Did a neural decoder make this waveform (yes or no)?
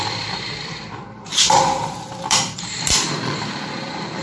yes